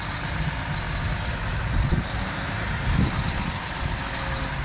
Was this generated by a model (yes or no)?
no